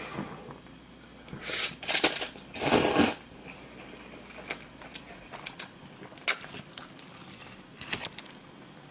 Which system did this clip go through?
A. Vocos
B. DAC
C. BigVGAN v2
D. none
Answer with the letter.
D